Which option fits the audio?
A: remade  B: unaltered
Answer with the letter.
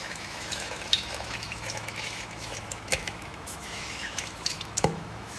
A